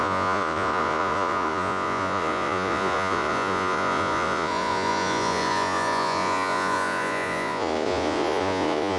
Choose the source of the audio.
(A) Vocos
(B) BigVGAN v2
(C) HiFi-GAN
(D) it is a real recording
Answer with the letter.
A